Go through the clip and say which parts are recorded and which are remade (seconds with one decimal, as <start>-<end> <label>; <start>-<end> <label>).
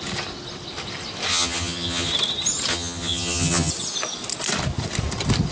0.0-1.3 recorded; 1.3-2.1 remade; 2.1-2.7 recorded; 2.7-3.7 remade; 3.7-5.5 recorded